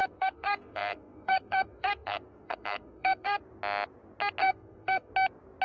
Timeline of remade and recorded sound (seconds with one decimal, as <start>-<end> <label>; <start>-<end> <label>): 0.0-3.4 remade; 3.4-4.4 recorded; 4.4-5.1 remade; 5.1-5.6 recorded